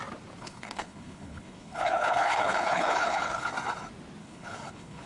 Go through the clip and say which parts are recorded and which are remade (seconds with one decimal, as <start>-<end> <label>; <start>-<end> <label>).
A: 0.0-0.4 recorded; 0.4-3.5 remade; 3.5-4.2 recorded; 4.2-5.1 remade